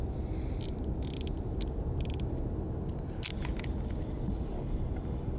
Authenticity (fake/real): real